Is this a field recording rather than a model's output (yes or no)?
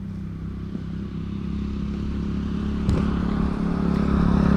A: yes